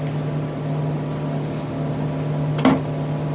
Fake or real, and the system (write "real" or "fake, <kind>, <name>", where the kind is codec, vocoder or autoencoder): real